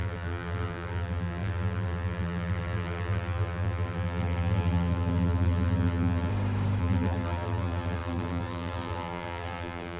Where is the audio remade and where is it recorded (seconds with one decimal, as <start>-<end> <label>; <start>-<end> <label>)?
0.0-6.3 remade; 6.3-6.8 recorded; 6.8-10.0 remade